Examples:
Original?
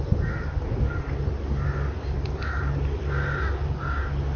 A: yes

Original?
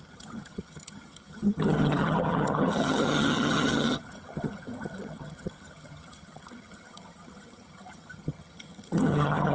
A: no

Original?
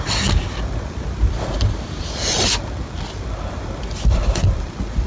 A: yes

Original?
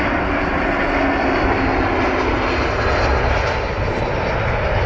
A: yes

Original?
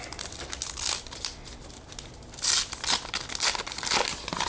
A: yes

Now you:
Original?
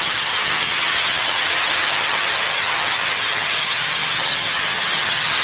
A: no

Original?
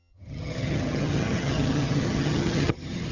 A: no